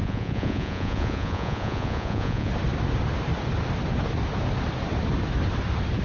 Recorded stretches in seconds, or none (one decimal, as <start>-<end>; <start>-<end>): 2.5-6.0